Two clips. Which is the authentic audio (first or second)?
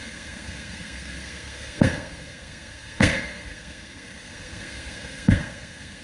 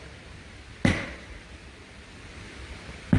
second